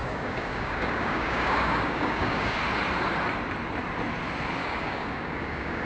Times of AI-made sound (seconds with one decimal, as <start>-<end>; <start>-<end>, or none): 0.0-2.6; 4.6-5.9

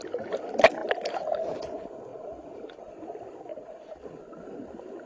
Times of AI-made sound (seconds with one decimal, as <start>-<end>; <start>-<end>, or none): 2.1-2.9; 3.5-4.0